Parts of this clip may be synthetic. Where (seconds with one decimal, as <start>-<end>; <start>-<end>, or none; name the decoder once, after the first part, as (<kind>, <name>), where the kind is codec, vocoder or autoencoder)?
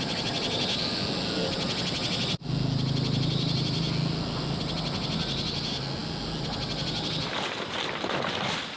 none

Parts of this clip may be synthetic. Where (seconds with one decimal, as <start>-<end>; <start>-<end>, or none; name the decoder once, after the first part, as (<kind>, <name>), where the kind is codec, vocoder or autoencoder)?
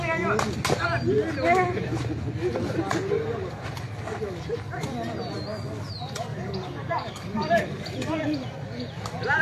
6.3-7.6 (codec, DAC)